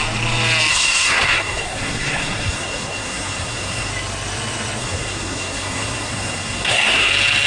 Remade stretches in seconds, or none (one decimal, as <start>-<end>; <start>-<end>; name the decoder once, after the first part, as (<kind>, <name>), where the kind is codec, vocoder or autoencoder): 0.7-3.9 (codec, SNAC); 4.8-7.1

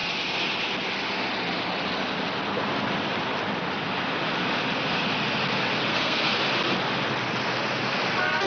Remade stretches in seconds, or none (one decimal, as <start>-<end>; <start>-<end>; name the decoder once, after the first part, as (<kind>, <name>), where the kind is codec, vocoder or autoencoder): 5.9-6.4 (codec, SNAC)

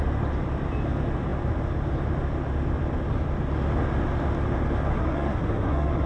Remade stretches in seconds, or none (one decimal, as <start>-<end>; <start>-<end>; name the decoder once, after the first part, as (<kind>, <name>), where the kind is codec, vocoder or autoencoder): 4.9-6.1 (codec, SNAC)

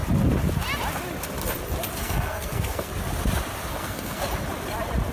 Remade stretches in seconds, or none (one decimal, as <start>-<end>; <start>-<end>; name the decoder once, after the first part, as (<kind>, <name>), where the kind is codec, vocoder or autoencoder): 2.0-2.9 (codec, SNAC); 3.7-4.2